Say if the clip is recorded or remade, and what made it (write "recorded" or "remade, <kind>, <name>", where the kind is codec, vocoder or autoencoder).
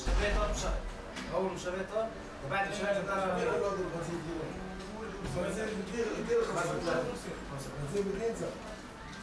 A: recorded